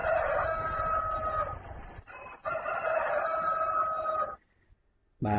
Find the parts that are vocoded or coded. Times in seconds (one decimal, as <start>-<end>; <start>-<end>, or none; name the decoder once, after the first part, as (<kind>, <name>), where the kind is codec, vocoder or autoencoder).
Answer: none